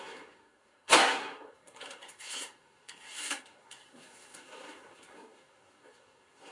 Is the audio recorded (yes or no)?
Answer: no